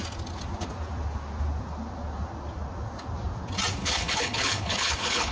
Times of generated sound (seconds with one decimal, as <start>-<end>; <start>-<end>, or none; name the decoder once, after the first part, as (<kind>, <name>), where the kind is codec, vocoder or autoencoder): 3.8-5.3 (codec, HILCodec)